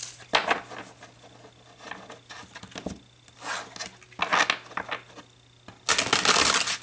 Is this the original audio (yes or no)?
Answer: yes